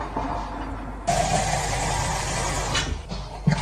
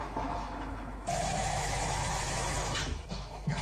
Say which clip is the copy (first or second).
second